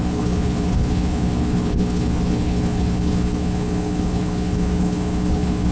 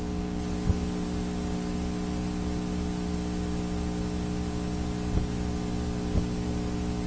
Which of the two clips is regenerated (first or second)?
first